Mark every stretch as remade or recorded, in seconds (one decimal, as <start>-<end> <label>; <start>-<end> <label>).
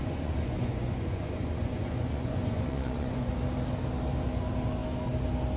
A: 0.0-3.3 remade; 3.3-5.6 recorded